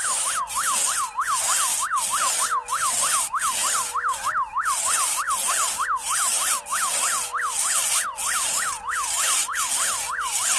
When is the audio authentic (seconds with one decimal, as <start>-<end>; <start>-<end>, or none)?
0.0-10.6